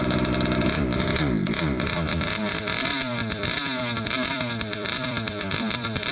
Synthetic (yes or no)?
yes